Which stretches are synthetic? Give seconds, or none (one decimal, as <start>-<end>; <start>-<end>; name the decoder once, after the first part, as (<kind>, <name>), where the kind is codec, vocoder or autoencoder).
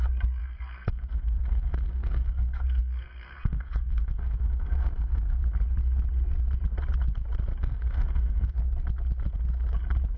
0.4-5.4 (codec, SNAC); 7.6-8.5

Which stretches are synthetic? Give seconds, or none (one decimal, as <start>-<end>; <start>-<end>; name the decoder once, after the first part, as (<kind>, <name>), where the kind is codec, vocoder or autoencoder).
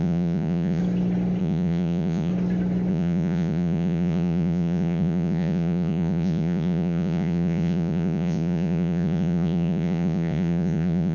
0.0-0.8 (vocoder, Vocos); 1.4-2.3; 2.9-11.1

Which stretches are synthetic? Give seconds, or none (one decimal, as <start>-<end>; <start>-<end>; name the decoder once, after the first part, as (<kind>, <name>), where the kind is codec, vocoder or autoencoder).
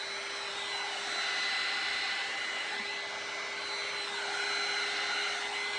none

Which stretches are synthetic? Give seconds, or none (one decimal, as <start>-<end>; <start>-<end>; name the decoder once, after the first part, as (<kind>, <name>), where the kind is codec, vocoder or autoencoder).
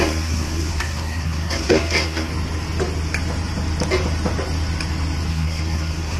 0.0-2.3 (codec, SNAC); 5.3-6.2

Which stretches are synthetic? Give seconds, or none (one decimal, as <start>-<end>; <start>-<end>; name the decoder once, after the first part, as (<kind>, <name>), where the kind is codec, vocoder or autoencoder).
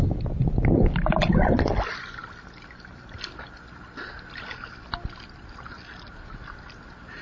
none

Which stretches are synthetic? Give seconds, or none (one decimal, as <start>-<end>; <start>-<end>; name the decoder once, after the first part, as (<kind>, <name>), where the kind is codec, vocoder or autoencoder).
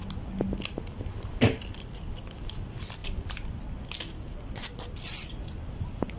none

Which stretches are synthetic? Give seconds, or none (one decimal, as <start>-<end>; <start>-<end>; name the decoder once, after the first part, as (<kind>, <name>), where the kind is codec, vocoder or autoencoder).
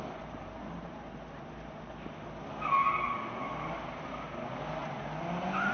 none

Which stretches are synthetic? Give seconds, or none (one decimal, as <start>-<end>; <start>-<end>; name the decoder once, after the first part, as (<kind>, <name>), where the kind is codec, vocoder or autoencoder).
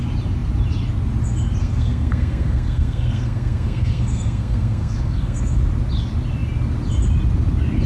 1.6-5.6 (codec, SNAC)